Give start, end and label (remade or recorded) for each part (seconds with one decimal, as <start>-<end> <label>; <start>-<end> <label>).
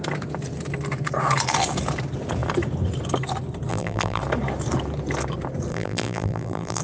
0.0-3.7 recorded; 3.7-4.2 remade; 4.2-5.7 recorded; 5.7-6.8 remade